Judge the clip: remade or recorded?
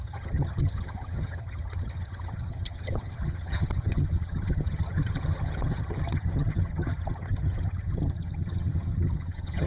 remade